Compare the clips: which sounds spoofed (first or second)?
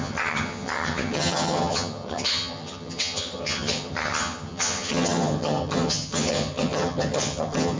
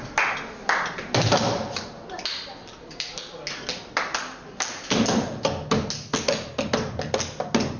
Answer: first